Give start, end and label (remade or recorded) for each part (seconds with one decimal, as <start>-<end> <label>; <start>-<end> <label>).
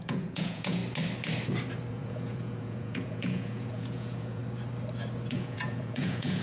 0.0-0.8 remade; 0.8-1.9 recorded; 1.9-4.4 remade; 4.4-5.3 recorded; 5.3-6.4 remade